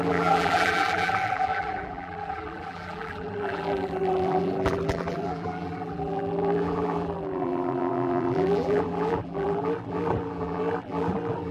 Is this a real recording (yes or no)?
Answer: no